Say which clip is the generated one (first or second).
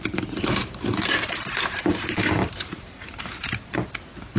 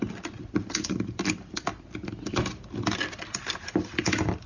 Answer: first